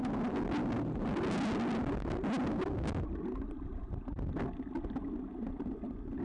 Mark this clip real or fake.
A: real